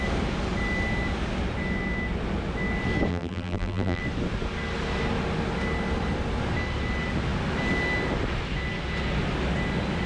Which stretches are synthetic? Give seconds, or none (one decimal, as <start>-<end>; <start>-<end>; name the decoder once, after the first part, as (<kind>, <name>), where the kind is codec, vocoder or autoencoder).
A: 3.1-4.0 (vocoder, BigVGAN v2)